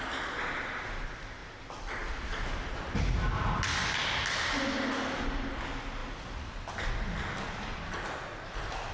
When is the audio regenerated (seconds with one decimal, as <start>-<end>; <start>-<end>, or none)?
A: none